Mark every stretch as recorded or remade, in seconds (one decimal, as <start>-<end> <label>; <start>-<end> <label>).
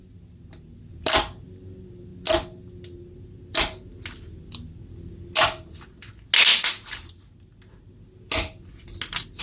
0.0-9.4 recorded